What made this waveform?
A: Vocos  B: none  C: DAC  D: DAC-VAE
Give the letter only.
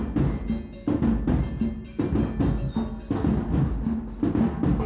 B